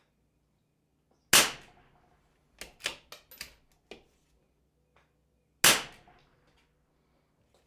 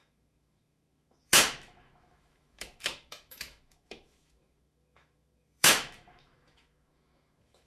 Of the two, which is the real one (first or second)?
first